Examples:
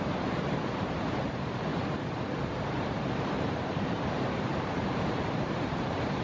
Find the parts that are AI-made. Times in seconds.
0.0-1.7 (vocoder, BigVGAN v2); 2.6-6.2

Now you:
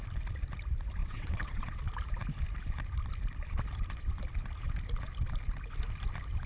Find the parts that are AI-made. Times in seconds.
1.0-1.8 (vocoder, WaveNeXt)

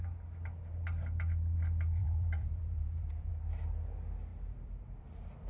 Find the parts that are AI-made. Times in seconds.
2.0-3.3 (vocoder, BigVGAN v2); 4.3-5.0

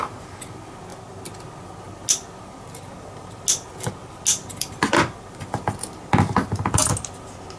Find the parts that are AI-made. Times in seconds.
4.3-6.9 (vocoder, BigVGAN v2)

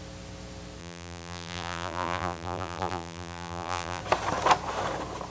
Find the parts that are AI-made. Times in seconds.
0.8-4.0 (vocoder, BigVGAN v2)

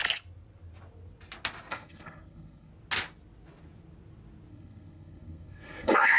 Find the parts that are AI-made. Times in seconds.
1.7-2.7 (codec, SNAC); 4.5-6.2